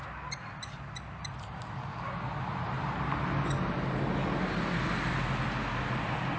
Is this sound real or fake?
real